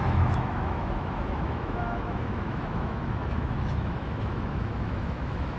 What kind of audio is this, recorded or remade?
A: remade